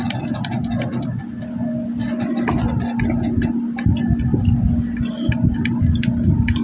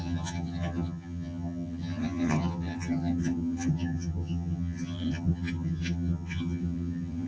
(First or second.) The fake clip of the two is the second